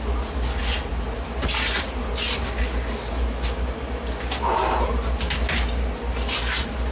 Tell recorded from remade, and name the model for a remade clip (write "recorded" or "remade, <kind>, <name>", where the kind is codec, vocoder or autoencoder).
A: recorded